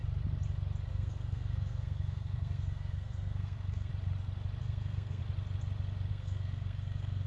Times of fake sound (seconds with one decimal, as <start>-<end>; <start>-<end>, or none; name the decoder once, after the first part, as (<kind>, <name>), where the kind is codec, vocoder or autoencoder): 0.9-3.9 (codec, SNAC); 4.6-5.2; 6.1-7.3